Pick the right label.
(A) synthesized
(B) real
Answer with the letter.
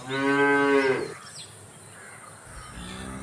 B